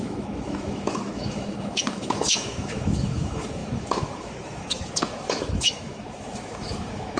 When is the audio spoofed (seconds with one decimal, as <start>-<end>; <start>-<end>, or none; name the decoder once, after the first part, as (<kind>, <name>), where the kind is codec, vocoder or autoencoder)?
0.0-7.2 (autoencoder, DAC-VAE)